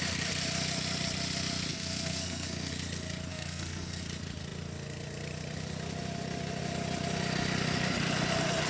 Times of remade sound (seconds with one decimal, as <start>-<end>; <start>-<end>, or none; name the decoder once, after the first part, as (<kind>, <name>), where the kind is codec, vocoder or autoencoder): 1.7-2.7 (codec, SNAC); 3.3-4.0